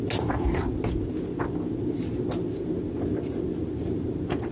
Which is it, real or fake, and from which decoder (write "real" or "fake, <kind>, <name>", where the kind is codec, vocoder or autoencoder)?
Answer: real